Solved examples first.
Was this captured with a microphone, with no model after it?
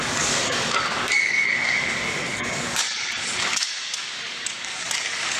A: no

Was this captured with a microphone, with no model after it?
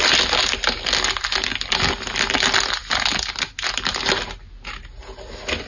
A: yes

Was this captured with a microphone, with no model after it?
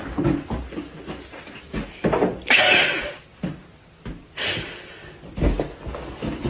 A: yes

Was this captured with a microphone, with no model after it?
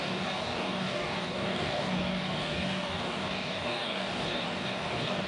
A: no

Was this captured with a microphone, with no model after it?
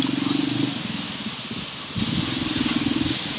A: yes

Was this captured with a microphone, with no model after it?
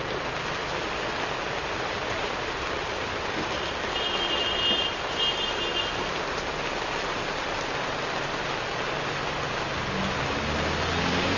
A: yes